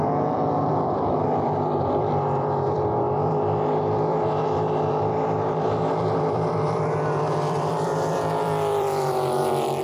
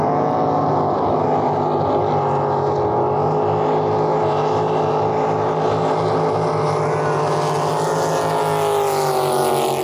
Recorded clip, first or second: second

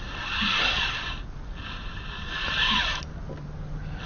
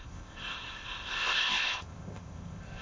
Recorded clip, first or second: first